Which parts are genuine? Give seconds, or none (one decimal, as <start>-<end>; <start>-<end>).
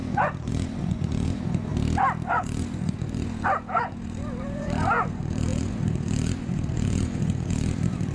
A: 1.7-2.3